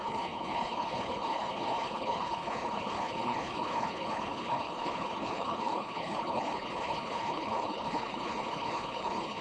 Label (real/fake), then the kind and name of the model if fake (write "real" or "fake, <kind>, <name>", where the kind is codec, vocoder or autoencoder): fake, codec, HILCodec